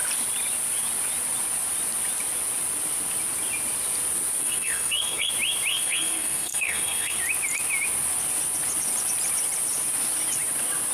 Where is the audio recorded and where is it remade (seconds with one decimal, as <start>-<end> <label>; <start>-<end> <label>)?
0.0-4.4 recorded; 4.4-5.3 remade; 5.3-5.7 recorded; 5.7-7.2 remade; 7.2-10.9 recorded